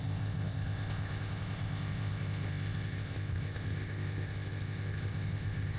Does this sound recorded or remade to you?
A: remade